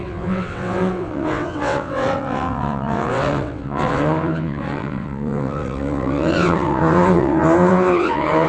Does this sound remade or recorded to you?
remade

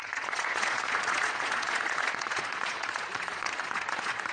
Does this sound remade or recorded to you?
remade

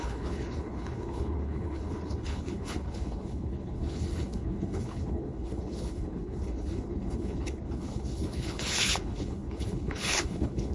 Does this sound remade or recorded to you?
remade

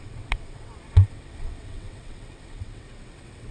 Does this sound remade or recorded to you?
remade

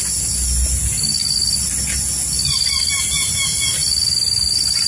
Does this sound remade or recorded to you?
recorded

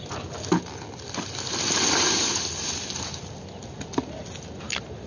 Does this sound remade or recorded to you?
recorded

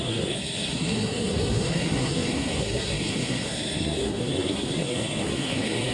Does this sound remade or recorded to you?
remade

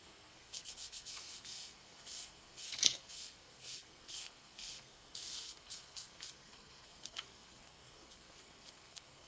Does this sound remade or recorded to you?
remade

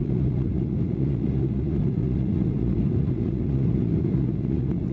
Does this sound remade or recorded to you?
remade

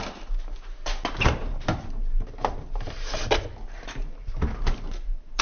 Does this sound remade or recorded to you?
recorded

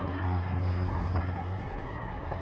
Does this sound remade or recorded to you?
remade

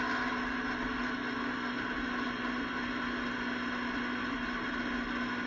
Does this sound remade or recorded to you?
recorded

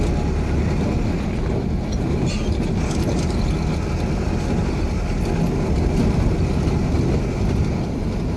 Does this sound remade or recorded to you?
recorded